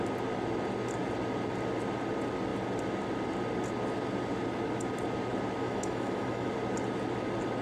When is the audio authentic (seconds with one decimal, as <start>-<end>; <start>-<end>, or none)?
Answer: 0.0-5.6; 6.5-7.6